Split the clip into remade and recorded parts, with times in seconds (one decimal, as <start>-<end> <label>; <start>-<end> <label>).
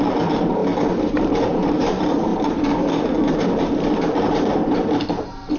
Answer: 0.0-0.6 remade; 0.6-1.4 recorded; 1.4-2.3 remade; 2.3-3.4 recorded; 3.4-5.6 remade